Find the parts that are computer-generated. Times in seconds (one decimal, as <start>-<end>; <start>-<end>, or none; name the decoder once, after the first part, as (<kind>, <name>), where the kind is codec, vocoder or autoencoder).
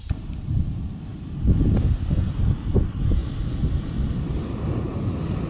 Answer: 1.8-2.4 (codec, SNAC)